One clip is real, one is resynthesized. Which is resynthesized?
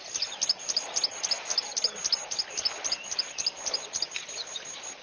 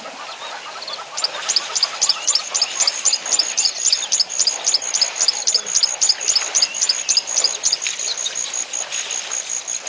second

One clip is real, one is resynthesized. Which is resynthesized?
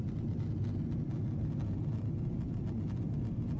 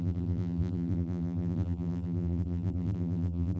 second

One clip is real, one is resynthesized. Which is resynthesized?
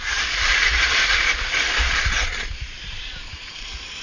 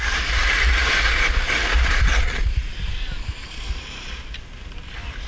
first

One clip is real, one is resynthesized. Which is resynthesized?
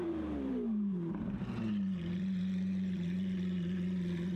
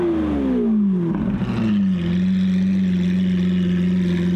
first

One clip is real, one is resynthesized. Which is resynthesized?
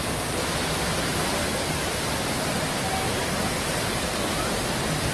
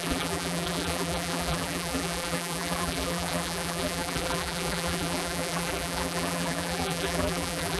second